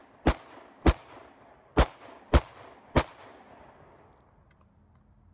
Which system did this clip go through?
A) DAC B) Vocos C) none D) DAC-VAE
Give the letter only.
C